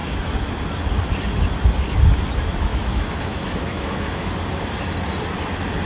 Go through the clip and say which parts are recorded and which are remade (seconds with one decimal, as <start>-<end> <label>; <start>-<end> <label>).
0.0-2.7 recorded; 2.7-4.3 remade; 4.3-5.9 recorded